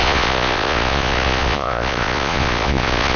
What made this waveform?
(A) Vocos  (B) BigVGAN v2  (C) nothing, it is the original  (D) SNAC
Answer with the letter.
A